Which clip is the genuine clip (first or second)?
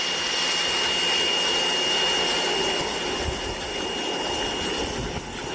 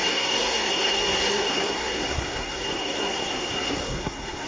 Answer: first